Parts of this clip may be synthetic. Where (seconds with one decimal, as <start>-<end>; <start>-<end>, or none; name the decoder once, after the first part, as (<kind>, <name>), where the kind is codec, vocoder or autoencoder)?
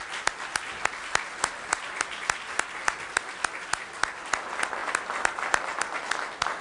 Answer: 4.8-5.6 (vocoder, BigVGAN v2)